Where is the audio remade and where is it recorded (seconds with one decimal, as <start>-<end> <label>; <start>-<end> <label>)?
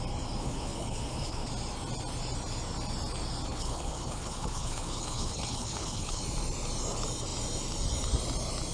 0.0-0.4 recorded; 0.4-1.5 remade; 1.5-3.5 recorded; 3.5-6.2 remade; 6.2-8.7 recorded